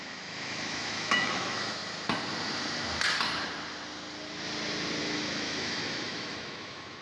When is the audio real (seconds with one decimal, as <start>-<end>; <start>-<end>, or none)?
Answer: 1.8-5.0